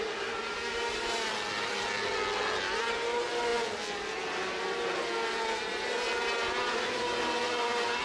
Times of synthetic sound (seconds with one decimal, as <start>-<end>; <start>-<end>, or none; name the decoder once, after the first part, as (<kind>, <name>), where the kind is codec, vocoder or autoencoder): none